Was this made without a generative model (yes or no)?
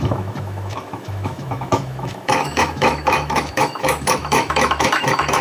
no